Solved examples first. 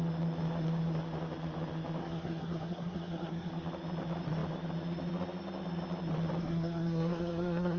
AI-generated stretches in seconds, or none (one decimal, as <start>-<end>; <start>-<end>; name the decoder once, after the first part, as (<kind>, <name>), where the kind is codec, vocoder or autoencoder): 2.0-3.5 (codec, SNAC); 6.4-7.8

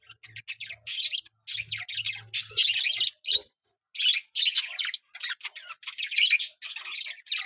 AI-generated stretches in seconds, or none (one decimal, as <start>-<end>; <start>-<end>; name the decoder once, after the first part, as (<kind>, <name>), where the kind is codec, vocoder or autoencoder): none

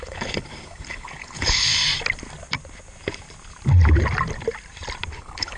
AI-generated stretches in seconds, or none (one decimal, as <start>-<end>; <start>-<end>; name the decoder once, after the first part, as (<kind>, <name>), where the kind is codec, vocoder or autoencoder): 0.0-1.7 (codec, HILCodec); 5.1-5.6

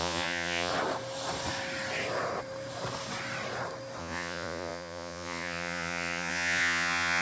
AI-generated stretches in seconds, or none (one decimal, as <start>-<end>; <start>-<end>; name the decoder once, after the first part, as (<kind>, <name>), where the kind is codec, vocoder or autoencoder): 0.0-0.7 (vocoder, Vocos); 4.0-7.2

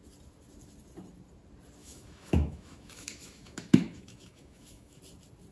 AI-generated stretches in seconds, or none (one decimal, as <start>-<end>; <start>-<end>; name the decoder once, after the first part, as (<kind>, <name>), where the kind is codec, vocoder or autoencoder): 1.8-5.0 (autoencoder, DAC-VAE)

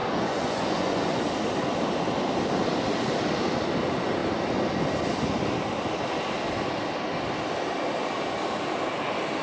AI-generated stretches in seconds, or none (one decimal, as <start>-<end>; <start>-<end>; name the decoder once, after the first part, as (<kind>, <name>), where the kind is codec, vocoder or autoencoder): 0.0-1.2 (vocoder, Vocos)

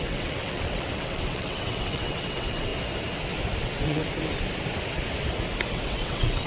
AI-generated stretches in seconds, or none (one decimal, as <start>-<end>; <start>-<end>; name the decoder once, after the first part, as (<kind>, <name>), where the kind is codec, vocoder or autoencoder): 0.0-2.7 (vocoder, WaveNeXt); 3.6-4.0; 5.7-6.5

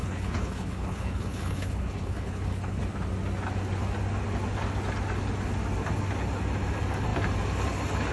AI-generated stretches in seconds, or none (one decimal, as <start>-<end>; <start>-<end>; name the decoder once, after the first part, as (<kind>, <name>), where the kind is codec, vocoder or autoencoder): 0.0-2.8 (codec, HILCodec)